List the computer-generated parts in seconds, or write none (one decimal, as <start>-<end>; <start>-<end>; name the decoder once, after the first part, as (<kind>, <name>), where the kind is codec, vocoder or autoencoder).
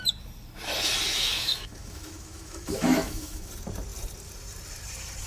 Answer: 1.1-3.5 (autoencoder, DAC-VAE)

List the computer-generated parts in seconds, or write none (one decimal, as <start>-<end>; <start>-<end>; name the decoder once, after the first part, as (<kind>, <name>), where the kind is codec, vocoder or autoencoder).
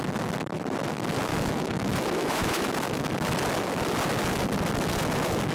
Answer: 1.3-2.7 (autoencoder, DAC-VAE)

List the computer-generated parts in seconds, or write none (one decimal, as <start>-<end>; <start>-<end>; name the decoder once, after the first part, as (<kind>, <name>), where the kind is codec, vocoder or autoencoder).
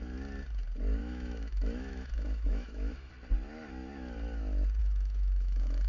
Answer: 1.0-3.1 (autoencoder, DAC-VAE); 4.8-5.9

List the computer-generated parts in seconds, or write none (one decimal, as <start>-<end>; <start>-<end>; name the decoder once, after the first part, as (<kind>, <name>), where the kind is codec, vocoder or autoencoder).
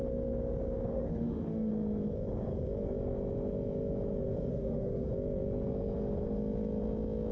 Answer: 0.9-1.7 (autoencoder, DAC-VAE); 4.5-5.1